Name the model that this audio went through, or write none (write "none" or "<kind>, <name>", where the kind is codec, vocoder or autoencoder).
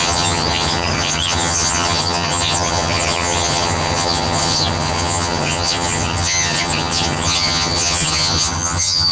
vocoder, HiFi-GAN